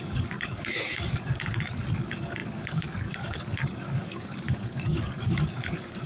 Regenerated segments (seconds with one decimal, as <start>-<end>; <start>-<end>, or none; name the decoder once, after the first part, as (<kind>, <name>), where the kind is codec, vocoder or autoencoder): 0.0-6.1 (codec, DAC)